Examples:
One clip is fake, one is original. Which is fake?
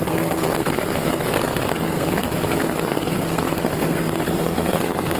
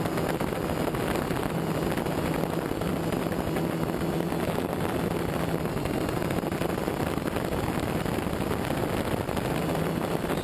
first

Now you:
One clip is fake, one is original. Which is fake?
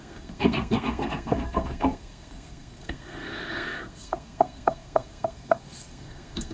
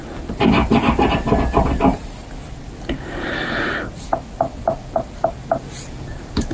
first